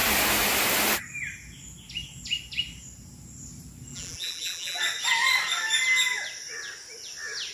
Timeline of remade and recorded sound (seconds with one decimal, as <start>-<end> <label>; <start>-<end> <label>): 0.0-3.9 recorded; 3.9-4.8 remade; 4.8-7.5 recorded